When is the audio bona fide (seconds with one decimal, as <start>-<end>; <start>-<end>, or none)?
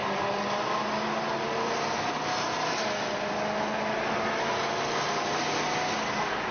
0.0-6.5